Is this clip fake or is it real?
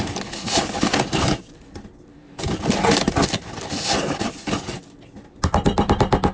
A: real